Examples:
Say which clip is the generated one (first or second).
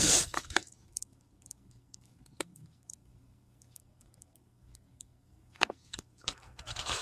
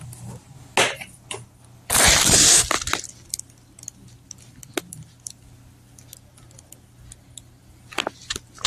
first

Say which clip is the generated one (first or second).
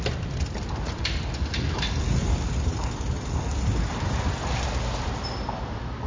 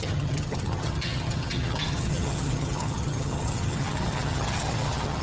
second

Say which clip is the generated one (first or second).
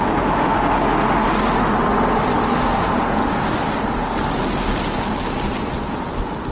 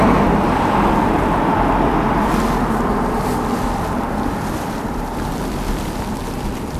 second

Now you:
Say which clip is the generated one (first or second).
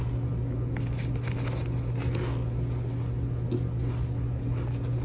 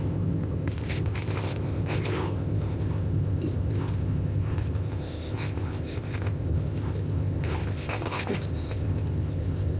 second